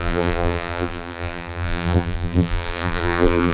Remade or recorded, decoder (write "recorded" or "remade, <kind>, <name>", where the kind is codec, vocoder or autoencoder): remade, vocoder, BigVGAN v2